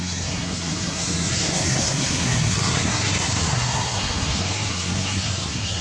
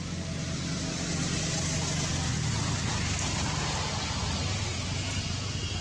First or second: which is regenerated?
first